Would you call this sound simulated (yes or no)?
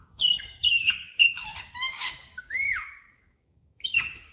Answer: yes